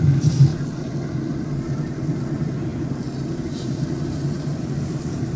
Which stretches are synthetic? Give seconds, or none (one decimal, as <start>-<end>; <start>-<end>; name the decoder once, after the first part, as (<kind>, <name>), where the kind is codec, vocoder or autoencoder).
2.7-3.3 (vocoder, BigVGAN v2); 4.5-5.4